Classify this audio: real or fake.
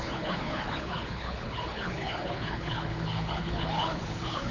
fake